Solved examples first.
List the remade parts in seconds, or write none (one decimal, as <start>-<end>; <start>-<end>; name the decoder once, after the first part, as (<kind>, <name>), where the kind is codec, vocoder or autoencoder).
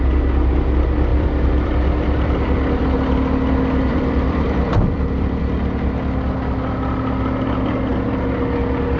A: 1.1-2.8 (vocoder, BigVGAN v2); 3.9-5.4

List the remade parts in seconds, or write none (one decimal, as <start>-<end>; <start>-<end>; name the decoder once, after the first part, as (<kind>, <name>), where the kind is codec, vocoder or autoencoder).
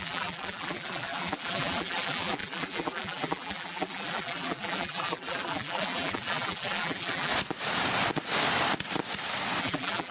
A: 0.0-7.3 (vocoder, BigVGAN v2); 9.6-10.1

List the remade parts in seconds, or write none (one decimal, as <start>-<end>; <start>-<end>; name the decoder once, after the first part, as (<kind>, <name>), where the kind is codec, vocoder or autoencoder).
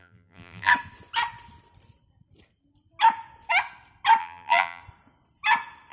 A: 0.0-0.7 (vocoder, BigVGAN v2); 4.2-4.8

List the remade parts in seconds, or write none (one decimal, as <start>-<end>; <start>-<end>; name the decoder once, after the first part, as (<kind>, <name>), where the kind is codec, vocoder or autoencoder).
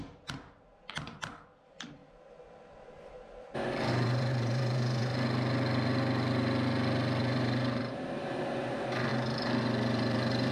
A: 0.0-2.0 (vocoder, BigVGAN v2); 3.9-5.1; 7.2-10.5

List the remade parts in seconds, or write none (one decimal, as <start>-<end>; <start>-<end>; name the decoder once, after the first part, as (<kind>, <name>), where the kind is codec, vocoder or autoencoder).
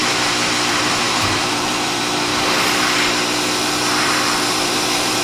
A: 0.0-2.3 (vocoder, BigVGAN v2); 4.0-5.2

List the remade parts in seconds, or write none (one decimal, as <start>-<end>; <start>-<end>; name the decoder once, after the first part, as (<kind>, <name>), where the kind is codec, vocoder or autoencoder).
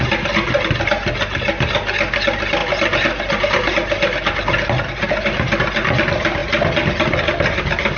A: none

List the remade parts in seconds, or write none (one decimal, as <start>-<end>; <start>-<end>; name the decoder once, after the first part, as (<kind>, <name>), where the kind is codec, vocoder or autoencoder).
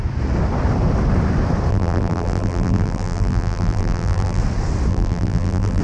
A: 1.7-4.4 (vocoder, BigVGAN v2); 4.9-5.8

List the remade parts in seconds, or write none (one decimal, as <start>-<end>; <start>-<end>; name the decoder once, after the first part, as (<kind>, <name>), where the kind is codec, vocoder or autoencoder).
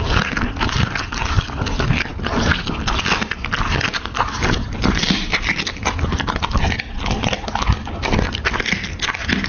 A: none